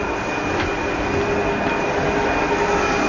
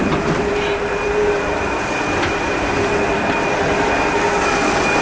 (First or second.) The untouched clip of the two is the first